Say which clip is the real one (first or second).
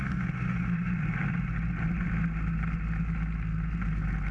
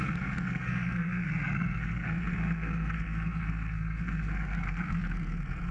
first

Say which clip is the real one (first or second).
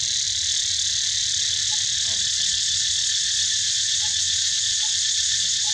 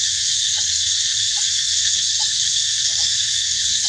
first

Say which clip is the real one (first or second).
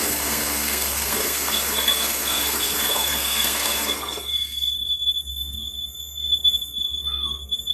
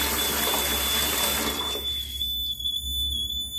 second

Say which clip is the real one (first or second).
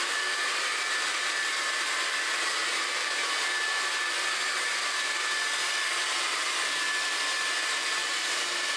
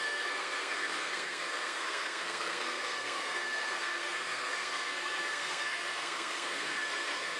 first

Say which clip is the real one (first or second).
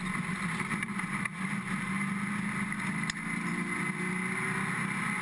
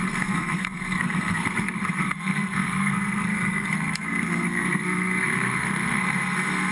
first